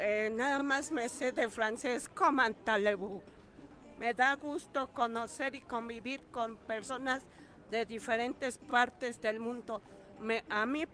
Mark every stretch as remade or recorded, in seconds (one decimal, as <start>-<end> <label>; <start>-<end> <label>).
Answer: 0.0-0.6 recorded; 0.6-1.8 remade; 1.8-3.9 recorded; 3.9-6.9 remade; 6.9-8.7 recorded; 8.7-9.8 remade; 9.8-10.9 recorded